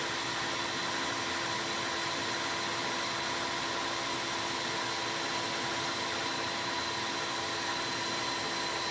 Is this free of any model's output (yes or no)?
yes